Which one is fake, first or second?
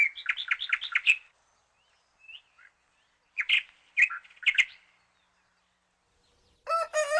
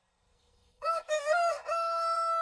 second